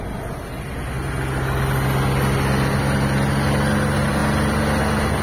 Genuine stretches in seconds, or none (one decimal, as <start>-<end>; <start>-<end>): 0.0-5.2